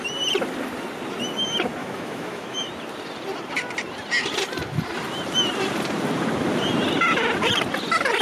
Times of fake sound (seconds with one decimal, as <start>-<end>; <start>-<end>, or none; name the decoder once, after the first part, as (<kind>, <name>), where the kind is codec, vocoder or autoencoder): 1.8-2.7 (autoencoder, DAC-VAE)